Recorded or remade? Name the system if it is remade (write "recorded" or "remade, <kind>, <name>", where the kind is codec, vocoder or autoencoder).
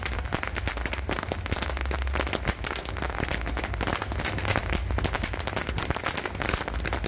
recorded